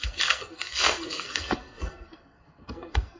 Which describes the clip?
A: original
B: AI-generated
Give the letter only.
B